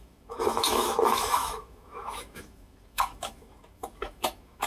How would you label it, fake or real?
fake